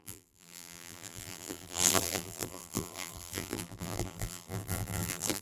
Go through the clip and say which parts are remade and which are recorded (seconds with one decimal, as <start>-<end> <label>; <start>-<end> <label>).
0.0-5.4 remade